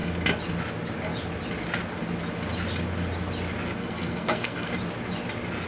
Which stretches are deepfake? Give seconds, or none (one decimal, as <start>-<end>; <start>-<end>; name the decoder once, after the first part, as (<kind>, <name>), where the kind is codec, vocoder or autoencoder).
3.8-4.7 (codec, SNAC)